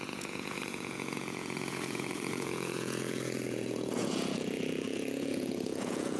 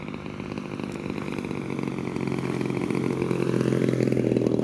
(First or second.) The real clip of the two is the second